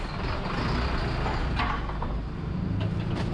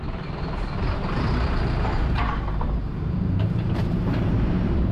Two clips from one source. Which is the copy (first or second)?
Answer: second